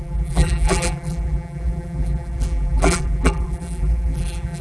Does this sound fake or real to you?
fake